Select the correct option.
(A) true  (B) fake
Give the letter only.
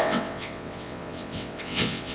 B